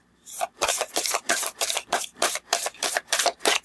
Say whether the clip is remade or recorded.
remade